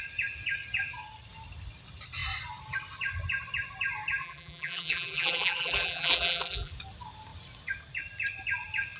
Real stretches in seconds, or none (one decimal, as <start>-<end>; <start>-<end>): 0.0-4.2; 6.7-9.0